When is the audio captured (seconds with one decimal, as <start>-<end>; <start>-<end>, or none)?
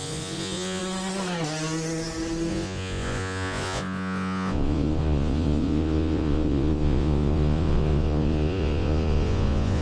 0.8-2.5